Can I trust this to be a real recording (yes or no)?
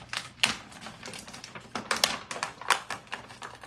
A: yes